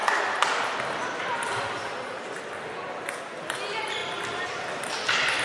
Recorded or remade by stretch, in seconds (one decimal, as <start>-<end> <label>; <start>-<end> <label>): 0.0-5.4 recorded